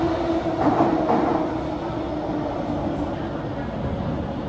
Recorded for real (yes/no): yes